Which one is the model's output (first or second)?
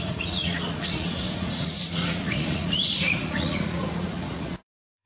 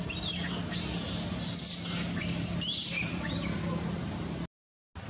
first